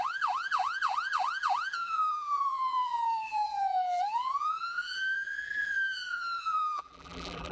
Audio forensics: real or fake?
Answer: fake